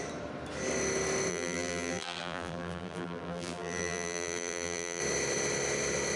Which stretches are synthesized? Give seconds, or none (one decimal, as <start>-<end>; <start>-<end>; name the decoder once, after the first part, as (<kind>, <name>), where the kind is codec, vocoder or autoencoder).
1.3-5.0 (vocoder, BigVGAN v2)